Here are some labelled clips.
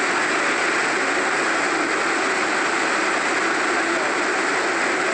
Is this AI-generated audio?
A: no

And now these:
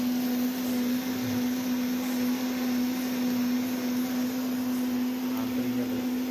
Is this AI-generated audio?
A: no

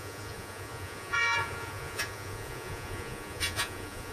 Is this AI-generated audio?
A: yes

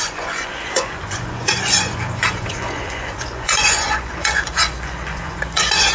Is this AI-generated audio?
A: yes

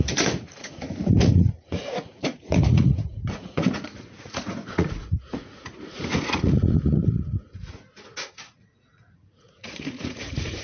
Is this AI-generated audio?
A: yes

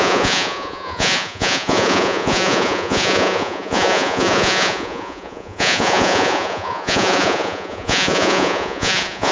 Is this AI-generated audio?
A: yes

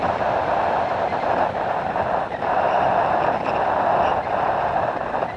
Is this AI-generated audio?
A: no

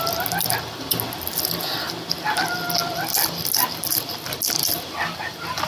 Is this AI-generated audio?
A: no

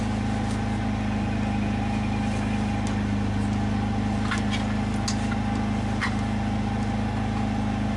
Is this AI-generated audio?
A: no